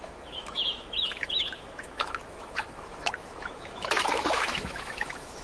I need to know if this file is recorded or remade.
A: remade